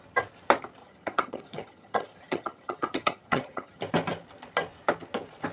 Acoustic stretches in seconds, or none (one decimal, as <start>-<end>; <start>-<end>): 0.0-0.8; 3.8-5.5